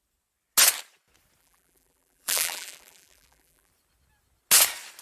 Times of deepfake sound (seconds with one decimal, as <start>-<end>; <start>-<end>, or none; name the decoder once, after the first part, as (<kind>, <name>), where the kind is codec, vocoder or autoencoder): 1.4-3.7 (vocoder, BigVGAN v2)